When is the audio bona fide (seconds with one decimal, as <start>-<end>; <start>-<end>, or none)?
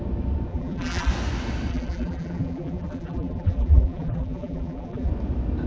0.0-0.5; 1.1-1.7; 5.1-5.7